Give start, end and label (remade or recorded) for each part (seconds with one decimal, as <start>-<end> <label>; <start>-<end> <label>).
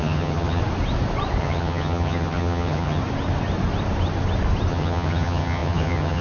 0.0-0.6 remade; 0.6-1.4 recorded; 1.4-3.0 remade; 3.0-4.7 recorded; 4.7-6.2 remade